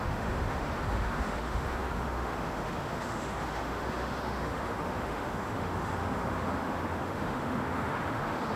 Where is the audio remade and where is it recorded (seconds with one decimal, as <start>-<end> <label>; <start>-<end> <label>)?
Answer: 0.0-8.6 remade